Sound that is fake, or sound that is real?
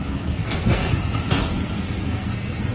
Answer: fake